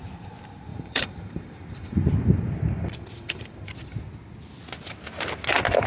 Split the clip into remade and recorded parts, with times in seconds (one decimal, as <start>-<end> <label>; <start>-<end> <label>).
0.0-0.7 recorded; 0.7-3.7 remade; 3.7-5.9 recorded